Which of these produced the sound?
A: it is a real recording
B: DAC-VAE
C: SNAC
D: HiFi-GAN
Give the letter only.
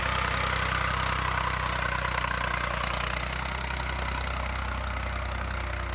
A